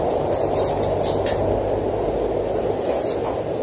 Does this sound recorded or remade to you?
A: recorded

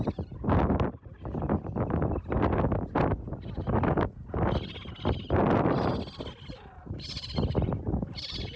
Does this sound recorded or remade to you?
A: recorded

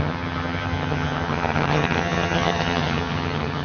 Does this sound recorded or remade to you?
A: remade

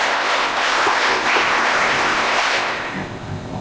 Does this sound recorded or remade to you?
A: remade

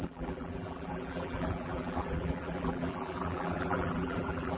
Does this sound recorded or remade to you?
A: remade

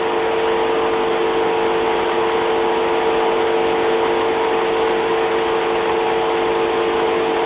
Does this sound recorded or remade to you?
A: recorded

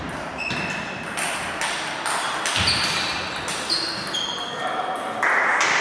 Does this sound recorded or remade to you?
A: recorded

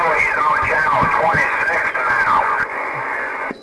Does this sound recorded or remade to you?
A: remade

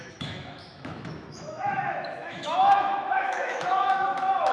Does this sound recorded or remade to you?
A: remade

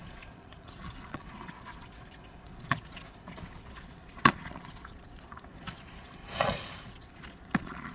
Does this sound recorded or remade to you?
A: remade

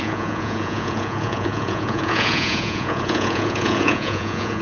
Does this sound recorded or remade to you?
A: remade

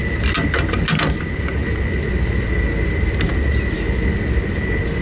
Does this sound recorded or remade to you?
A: recorded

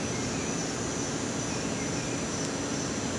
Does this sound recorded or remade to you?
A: recorded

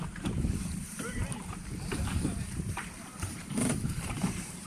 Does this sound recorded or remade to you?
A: remade